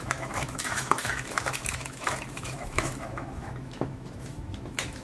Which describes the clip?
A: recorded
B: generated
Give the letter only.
B